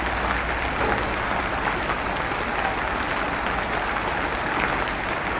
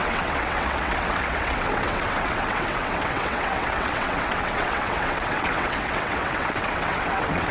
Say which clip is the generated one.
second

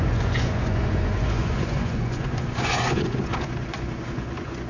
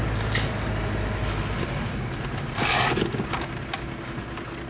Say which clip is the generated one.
first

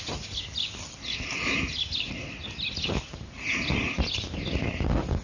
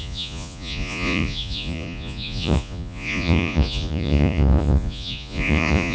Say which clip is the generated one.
second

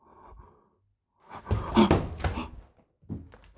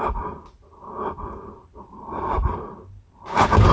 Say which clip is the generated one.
second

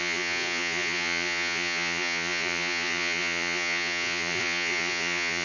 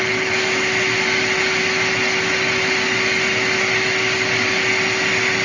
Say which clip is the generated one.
first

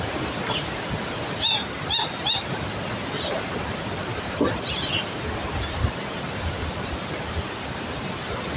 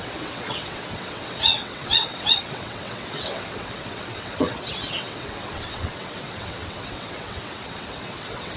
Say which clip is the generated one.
second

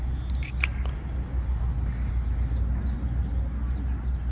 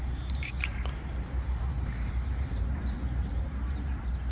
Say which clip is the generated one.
second